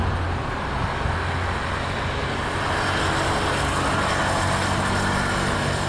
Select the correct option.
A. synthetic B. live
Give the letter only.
B